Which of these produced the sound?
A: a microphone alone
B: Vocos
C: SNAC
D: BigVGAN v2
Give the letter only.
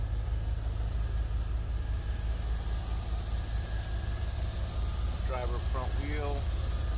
A